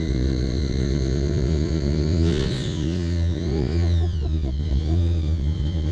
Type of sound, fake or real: fake